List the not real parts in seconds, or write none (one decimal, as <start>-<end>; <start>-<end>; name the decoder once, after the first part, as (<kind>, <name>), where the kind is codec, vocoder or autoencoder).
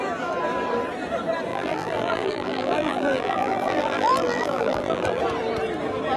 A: 1.5-5.2 (vocoder, BigVGAN v2)